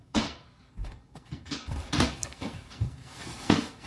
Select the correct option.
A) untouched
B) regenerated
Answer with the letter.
B